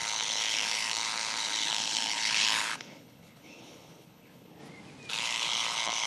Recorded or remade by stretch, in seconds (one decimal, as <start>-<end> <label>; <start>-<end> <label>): 0.0-4.6 remade; 4.6-5.1 recorded; 5.1-6.1 remade